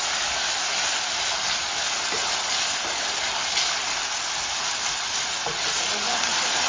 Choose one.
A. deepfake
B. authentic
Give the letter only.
B